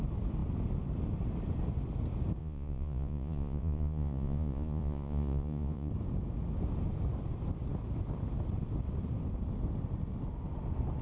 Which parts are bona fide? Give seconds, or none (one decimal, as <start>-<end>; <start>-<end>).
0.0-2.4; 5.9-11.0